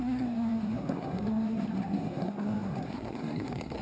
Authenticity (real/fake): fake